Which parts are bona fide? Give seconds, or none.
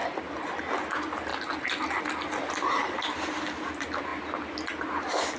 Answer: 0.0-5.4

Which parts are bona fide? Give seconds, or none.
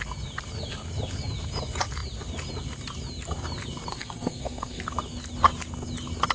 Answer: 0.0-3.9; 4.8-6.3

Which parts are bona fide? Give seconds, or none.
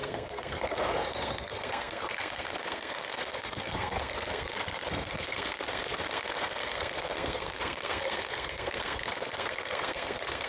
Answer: none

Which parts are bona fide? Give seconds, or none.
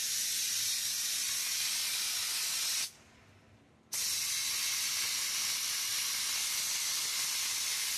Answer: 0.0-8.0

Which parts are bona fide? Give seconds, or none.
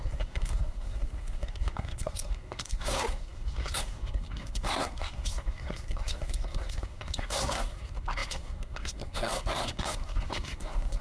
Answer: none